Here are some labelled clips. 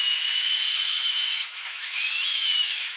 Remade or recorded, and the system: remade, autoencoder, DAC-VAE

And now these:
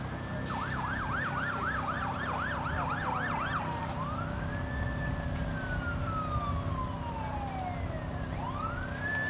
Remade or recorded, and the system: recorded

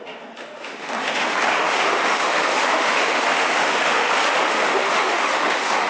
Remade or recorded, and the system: remade, autoencoder, DAC-VAE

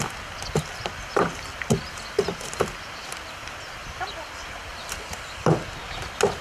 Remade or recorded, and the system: recorded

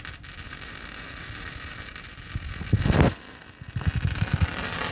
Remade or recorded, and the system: recorded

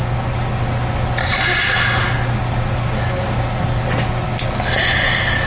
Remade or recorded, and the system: recorded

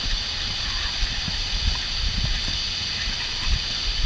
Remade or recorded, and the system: recorded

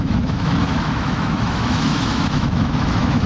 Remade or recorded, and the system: remade, autoencoder, DAC-VAE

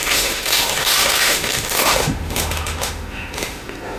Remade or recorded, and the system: remade, autoencoder, DAC-VAE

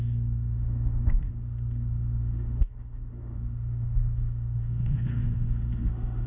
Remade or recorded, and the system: remade, autoencoder, DAC-VAE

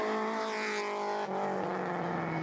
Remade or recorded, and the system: recorded